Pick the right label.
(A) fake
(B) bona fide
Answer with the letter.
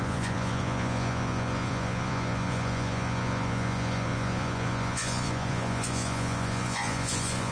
A